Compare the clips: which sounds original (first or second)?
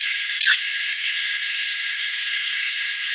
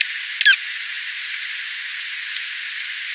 second